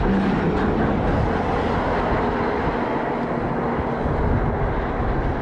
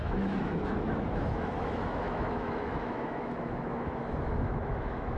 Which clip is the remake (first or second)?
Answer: second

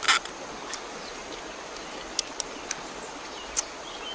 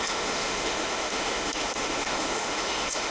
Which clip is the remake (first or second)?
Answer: second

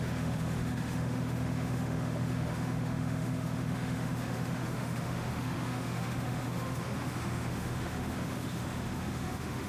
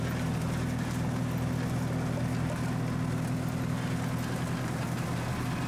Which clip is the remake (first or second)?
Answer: first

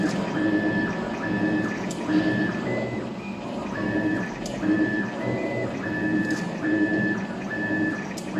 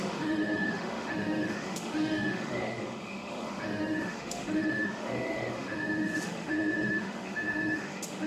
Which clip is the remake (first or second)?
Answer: second